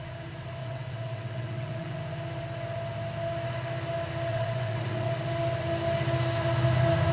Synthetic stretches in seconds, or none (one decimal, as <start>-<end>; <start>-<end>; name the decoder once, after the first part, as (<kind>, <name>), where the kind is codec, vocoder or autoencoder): 0.6-2.0 (vocoder, WaveNeXt); 4.3-5.1